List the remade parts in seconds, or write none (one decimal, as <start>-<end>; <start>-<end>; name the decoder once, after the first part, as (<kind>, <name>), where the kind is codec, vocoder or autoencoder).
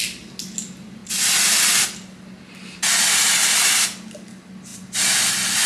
none